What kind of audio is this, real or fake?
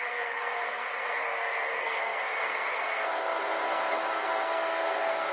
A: fake